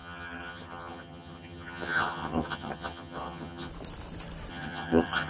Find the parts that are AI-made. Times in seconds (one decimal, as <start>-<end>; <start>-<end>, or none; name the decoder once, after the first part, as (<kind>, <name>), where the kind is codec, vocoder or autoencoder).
0.0-3.7 (vocoder, HiFi-GAN); 4.5-5.3